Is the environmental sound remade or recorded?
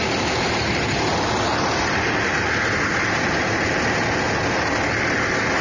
recorded